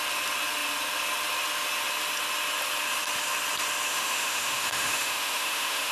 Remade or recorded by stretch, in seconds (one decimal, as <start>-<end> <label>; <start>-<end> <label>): 0.0-3.9 recorded; 3.9-5.9 remade